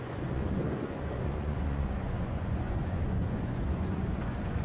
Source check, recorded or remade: remade